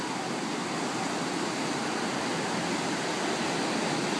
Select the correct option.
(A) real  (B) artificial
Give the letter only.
A